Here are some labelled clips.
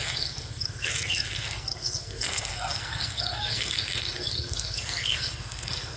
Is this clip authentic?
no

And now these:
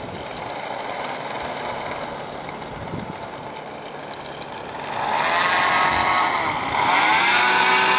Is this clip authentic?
yes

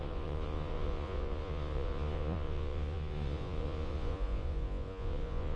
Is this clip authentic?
no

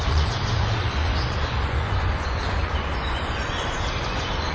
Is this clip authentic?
no